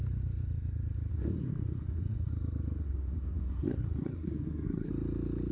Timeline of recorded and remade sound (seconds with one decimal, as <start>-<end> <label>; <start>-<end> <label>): 0.0-1.1 recorded; 1.1-2.3 remade; 2.3-2.8 recorded; 2.8-4.9 remade; 4.9-5.5 recorded